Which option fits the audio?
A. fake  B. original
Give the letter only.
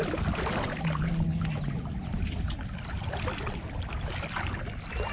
B